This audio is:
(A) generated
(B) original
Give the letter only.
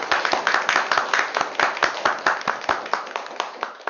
B